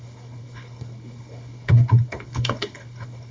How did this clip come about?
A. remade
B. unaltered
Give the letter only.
A